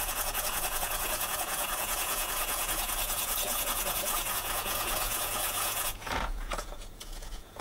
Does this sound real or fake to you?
fake